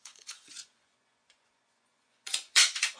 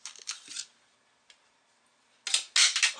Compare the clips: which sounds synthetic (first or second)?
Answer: first